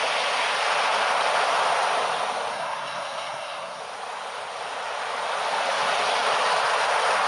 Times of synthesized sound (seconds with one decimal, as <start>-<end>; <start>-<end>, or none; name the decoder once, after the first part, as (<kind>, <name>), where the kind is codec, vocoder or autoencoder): 2.5-3.8 (codec, SNAC)